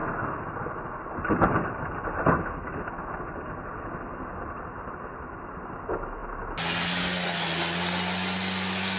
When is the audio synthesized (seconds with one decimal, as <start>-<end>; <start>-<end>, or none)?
none